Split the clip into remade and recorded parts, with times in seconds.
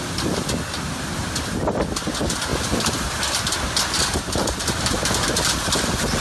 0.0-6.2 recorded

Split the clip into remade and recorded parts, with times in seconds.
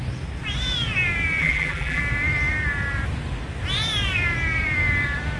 0.0-1.4 recorded; 1.4-2.0 remade; 2.0-5.4 recorded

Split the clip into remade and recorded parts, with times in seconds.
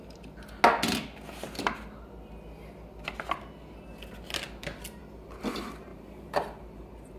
0.0-5.9 recorded; 5.9-7.2 remade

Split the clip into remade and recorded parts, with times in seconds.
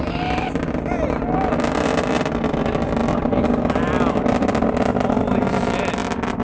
0.0-6.4 recorded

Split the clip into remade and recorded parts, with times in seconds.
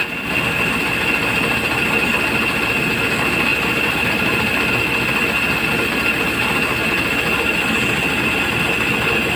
0.0-3.5 recorded; 3.5-4.7 remade; 4.7-9.4 recorded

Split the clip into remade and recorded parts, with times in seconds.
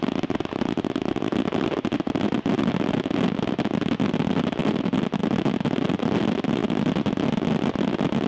0.0-4.6 recorded; 4.6-5.2 remade; 5.2-8.3 recorded